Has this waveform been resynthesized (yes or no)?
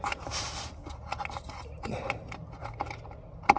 no